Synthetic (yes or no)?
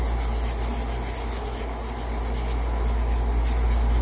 no